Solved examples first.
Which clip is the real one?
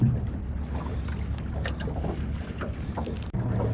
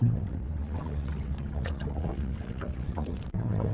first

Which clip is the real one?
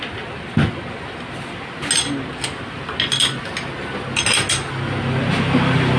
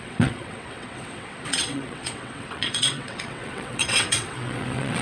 first